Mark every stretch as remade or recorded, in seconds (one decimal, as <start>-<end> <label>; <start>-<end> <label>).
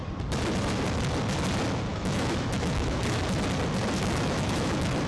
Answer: 0.0-1.9 recorded; 1.9-3.2 remade; 3.2-4.0 recorded; 4.0-5.1 remade